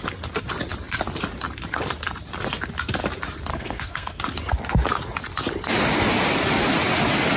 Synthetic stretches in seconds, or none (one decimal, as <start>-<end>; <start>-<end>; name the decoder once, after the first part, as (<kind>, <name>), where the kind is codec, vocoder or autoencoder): 3.5-4.2 (codec, SNAC)